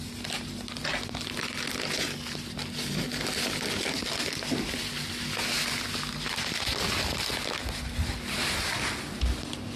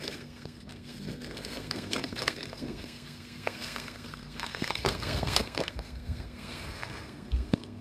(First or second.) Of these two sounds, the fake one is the second